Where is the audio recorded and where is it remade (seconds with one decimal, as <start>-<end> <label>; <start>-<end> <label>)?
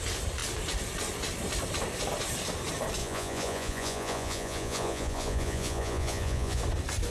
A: 0.0-3.0 recorded; 3.0-6.6 remade; 6.6-7.1 recorded